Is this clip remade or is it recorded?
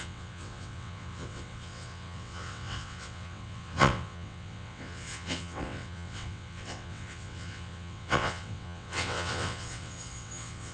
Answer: remade